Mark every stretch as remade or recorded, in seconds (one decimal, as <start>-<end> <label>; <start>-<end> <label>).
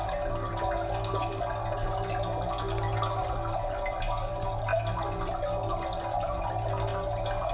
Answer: 0.0-7.5 recorded